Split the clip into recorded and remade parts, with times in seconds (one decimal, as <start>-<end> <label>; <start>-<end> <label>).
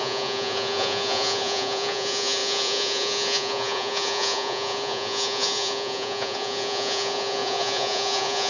0.0-8.5 remade